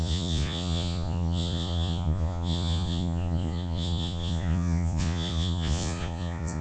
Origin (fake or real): fake